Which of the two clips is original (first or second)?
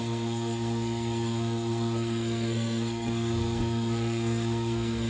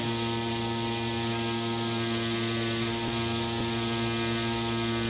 second